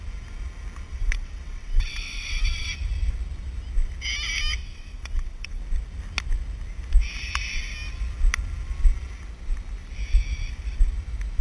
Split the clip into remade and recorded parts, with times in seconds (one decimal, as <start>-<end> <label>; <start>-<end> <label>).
0.0-0.9 recorded; 0.9-2.7 remade; 2.7-4.6 recorded; 4.6-5.6 remade; 5.6-11.4 recorded